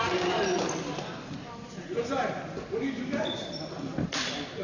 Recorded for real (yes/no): yes